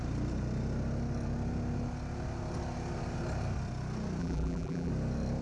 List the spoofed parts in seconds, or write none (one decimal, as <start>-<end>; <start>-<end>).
4.2-4.9